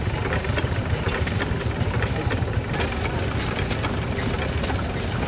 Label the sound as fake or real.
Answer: real